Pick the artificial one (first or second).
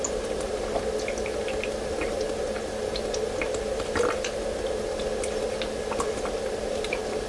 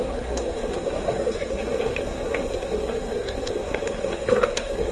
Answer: second